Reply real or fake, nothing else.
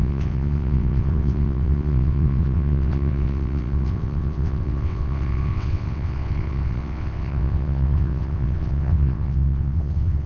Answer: fake